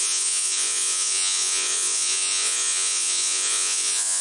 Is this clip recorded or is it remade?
remade